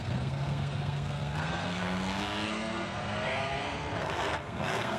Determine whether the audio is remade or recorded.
remade